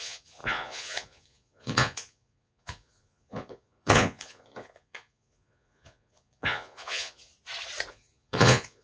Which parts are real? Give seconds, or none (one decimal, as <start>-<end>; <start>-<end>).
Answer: 7.3-7.9